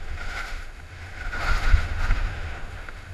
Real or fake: fake